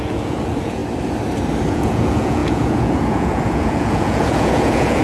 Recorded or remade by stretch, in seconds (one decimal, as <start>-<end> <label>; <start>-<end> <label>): 0.0-0.8 remade; 0.8-1.7 recorded; 1.7-5.0 remade